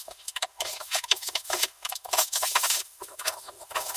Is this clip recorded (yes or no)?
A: no